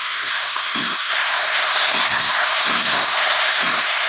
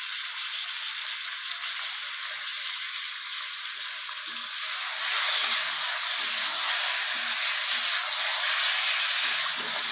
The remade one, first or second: first